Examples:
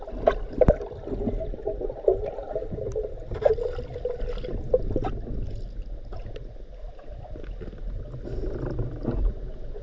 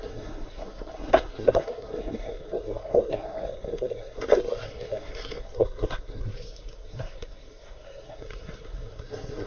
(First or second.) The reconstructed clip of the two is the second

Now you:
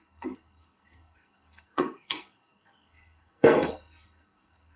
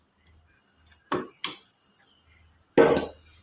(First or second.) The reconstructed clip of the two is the first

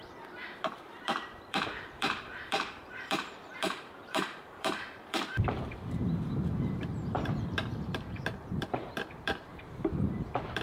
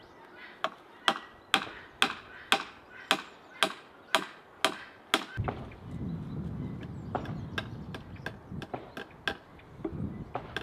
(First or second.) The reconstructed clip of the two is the first